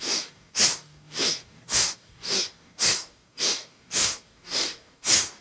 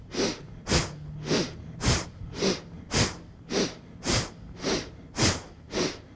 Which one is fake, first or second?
first